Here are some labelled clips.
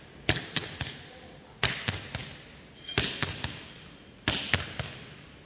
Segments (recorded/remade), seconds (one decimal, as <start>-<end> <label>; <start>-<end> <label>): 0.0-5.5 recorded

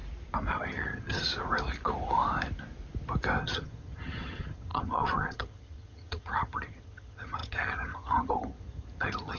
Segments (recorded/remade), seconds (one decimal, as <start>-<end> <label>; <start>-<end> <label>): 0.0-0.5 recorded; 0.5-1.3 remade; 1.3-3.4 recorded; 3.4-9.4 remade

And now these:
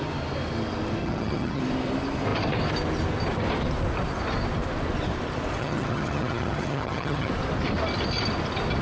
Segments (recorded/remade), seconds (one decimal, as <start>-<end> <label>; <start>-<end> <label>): 0.0-1.0 recorded; 1.0-1.6 remade; 1.6-5.6 recorded; 5.6-7.3 remade; 7.3-8.8 recorded